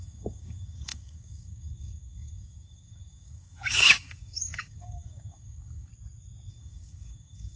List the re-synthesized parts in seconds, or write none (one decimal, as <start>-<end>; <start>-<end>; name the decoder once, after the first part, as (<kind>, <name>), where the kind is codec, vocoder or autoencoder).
0.0-5.9 (codec, DAC); 6.5-7.6